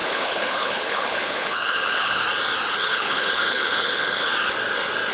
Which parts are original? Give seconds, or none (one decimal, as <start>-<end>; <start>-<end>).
2.2-2.7; 4.3-5.1